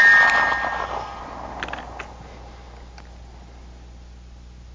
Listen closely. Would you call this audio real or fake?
real